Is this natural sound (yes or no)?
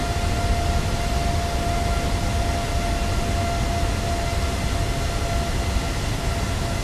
yes